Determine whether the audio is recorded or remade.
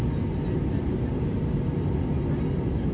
recorded